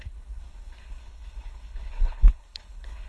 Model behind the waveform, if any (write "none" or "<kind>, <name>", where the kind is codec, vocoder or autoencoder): codec, HILCodec